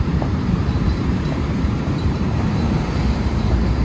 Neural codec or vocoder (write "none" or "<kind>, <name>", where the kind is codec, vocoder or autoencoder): vocoder, BigVGAN v2